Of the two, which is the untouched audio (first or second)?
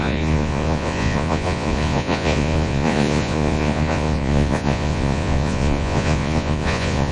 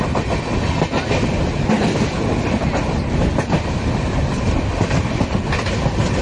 second